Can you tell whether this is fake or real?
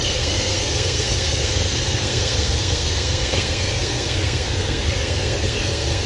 fake